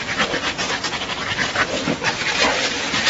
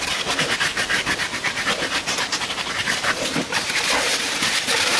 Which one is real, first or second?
first